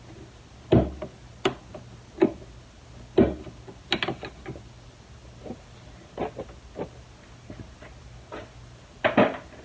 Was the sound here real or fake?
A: real